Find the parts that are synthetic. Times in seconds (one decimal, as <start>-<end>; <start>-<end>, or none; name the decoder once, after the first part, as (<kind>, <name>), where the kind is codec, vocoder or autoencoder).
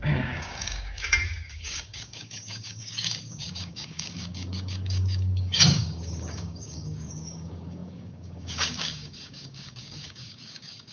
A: 0.0-10.9 (codec, DAC)